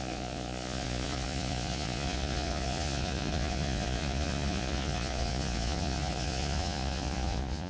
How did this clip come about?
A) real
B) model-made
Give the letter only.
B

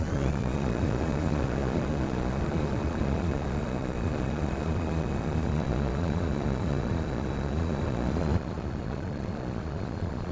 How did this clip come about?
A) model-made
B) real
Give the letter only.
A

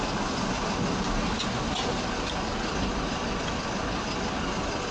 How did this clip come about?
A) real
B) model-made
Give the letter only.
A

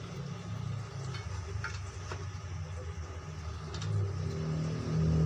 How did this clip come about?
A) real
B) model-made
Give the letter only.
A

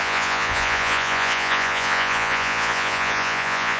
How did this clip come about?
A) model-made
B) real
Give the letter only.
A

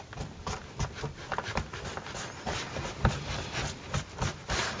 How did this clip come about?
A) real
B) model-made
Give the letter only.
A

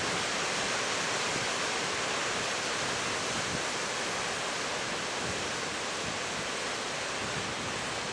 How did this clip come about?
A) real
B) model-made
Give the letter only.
A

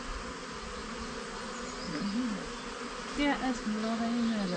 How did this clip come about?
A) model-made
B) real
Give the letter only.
B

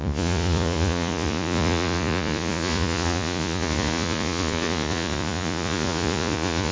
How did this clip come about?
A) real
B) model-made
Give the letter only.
B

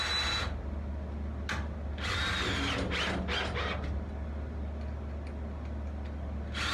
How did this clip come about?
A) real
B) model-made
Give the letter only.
A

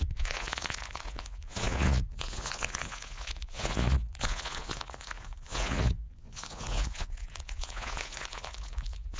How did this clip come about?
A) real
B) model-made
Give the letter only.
B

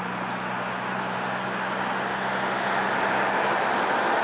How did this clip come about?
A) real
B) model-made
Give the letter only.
A